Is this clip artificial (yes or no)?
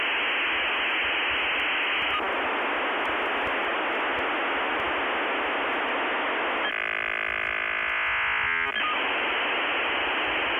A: no